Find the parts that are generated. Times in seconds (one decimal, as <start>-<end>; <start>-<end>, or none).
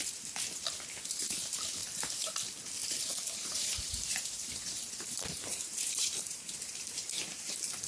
1.8-2.3; 2.8-7.5